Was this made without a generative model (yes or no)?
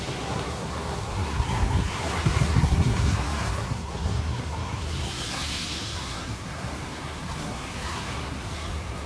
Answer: no